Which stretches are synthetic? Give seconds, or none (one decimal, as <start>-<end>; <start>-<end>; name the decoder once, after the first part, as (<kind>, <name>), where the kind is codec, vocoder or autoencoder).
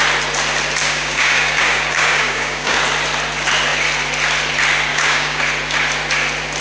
0.8-2.8 (codec, DAC); 4.9-5.4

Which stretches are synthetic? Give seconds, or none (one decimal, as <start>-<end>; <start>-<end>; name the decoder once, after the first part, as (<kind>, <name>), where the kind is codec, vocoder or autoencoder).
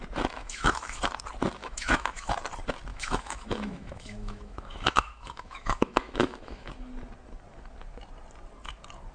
0.4-1.0 (autoencoder, DAC-VAE); 1.6-2.3; 2.9-6.7